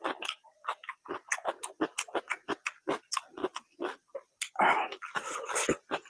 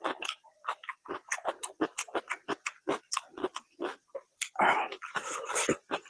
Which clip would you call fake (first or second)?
second